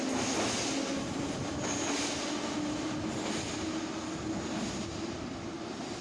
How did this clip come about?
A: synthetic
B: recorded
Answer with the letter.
B